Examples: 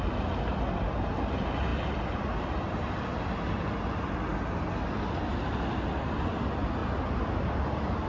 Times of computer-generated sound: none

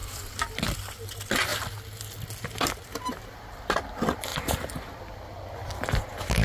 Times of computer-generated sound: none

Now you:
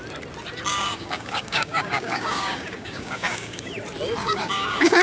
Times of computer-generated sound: 0.7-3.7 (codec, DAC); 4.2-5.0